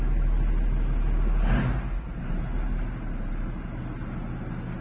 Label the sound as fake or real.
real